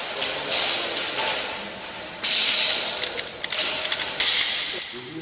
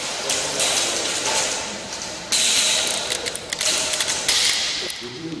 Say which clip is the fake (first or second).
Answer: second